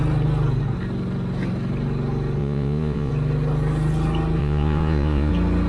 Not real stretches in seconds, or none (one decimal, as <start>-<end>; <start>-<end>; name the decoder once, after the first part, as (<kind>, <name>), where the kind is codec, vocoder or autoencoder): 2.4-3.1 (vocoder, Vocos); 4.4-5.3